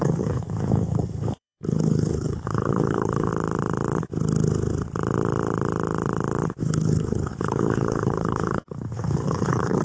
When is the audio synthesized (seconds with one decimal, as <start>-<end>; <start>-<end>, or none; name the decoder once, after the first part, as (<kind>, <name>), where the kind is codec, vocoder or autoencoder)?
0.0-3.3 (codec, HILCodec); 6.6-9.8